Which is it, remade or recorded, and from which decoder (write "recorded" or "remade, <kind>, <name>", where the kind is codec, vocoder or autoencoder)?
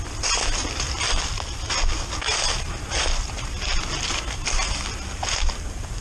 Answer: recorded